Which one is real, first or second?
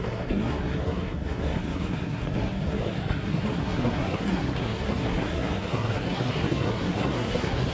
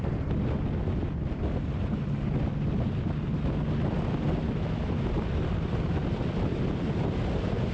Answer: second